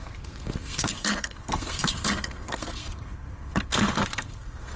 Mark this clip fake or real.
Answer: fake